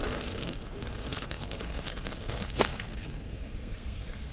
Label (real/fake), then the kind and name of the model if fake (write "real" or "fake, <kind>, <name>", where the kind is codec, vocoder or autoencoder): fake, codec, SNAC